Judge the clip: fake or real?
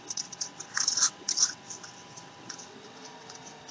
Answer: fake